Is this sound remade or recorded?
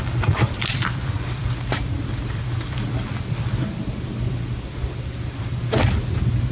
remade